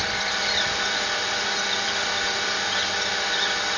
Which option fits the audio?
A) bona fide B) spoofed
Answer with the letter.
A